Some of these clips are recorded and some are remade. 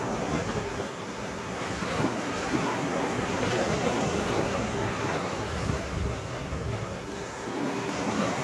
remade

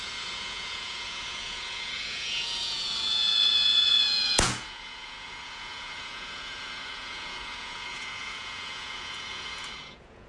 remade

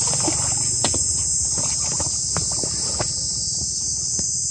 recorded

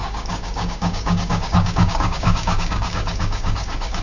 remade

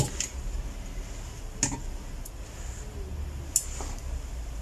recorded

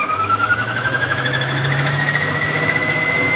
remade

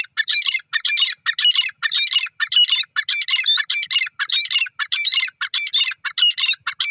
recorded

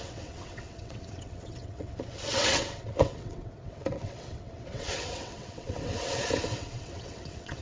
remade